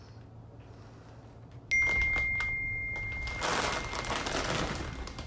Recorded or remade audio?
recorded